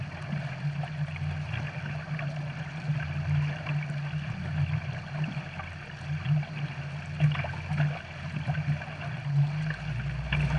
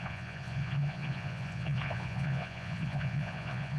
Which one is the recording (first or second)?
first